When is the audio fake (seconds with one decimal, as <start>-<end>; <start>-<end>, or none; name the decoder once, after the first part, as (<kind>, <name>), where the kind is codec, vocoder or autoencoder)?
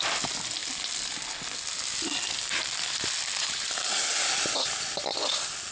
none